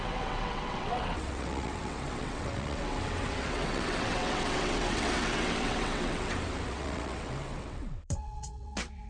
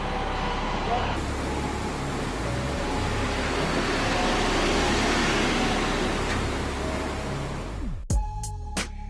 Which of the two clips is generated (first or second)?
first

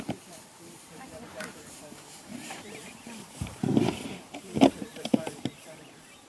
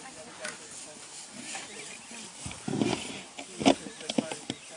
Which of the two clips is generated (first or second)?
first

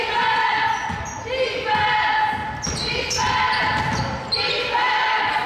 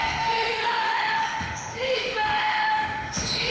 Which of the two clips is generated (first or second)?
second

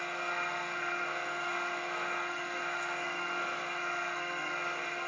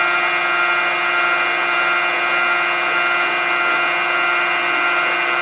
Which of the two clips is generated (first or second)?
first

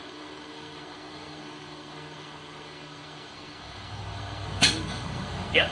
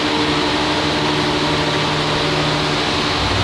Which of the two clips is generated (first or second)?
first